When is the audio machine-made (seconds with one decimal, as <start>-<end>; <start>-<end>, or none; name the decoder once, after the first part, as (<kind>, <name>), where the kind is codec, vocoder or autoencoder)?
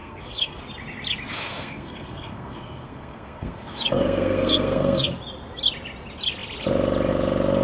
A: 0.0-0.6 (codec, SNAC); 1.3-5.1